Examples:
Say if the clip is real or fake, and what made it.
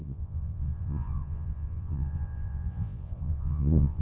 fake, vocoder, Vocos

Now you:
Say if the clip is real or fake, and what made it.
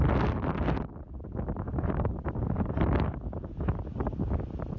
real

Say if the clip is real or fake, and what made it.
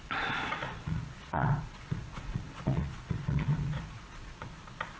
fake, vocoder, Vocos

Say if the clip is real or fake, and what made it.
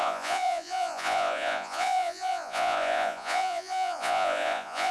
fake, vocoder, Vocos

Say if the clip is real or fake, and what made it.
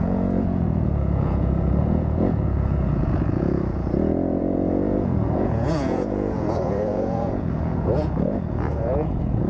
fake, vocoder, Vocos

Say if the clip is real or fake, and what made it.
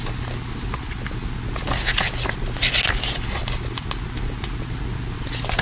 real